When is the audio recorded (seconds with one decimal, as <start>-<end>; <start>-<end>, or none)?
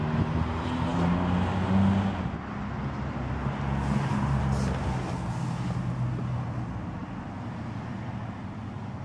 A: 0.0-7.0; 8.2-9.0